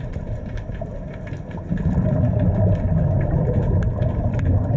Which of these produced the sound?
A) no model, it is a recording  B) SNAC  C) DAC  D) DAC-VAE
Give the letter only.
A